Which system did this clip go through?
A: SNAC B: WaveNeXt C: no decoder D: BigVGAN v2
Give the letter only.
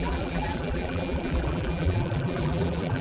D